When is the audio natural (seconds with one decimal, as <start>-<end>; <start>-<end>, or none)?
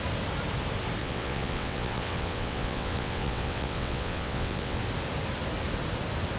0.0-1.0; 4.8-6.4